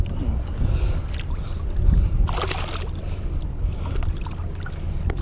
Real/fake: real